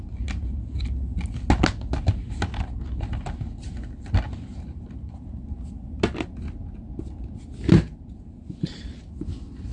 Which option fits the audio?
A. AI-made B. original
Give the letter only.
B